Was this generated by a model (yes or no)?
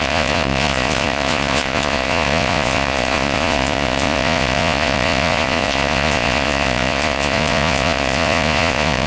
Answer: yes